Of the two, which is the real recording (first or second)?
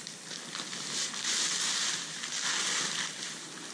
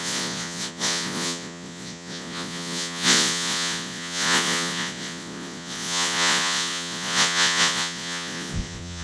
first